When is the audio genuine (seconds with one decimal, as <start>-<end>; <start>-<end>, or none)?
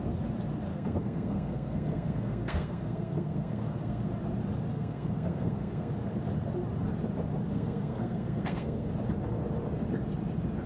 0.0-0.7; 4.1-4.7; 5.9-7.5; 8.9-10.7